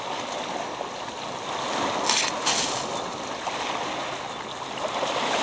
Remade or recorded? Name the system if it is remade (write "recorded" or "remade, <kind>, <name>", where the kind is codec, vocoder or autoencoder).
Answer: recorded